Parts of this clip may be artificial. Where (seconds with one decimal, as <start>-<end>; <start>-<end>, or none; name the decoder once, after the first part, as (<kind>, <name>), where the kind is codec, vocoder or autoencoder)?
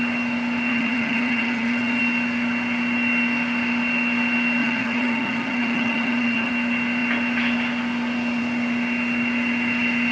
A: 0.7-2.0 (vocoder, HiFi-GAN); 4.6-6.5